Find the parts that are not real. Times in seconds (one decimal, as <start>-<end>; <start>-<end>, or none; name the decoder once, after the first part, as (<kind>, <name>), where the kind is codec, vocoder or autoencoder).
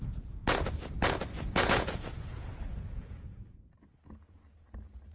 0.0-0.4 (vocoder, Vocos); 1.5-5.1